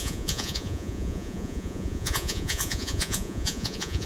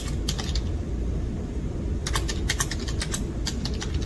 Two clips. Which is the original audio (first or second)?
second